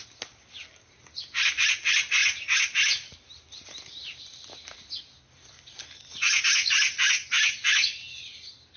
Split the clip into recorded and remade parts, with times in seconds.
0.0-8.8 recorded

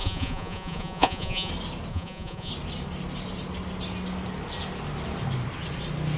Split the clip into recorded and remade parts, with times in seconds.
0.0-1.5 remade; 1.5-1.9 recorded; 1.9-2.5 remade; 2.5-6.2 recorded

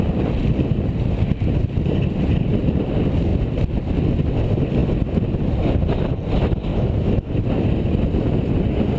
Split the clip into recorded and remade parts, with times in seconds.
0.0-6.7 recorded; 6.7-7.3 remade; 7.3-9.0 recorded

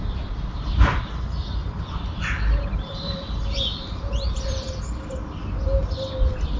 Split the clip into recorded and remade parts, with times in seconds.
0.0-1.6 recorded; 1.6-5.4 remade; 5.4-6.6 recorded

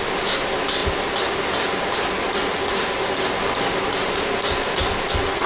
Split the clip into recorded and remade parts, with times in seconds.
0.0-5.5 recorded